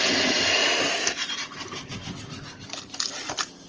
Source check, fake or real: fake